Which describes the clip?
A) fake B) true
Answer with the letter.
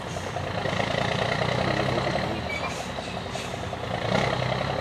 B